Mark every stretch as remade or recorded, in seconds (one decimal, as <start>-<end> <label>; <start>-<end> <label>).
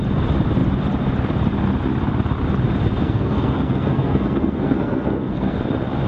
0.0-3.0 recorded; 3.0-5.6 remade; 5.6-6.1 recorded